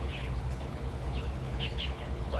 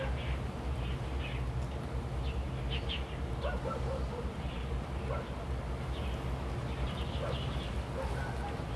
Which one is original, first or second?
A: second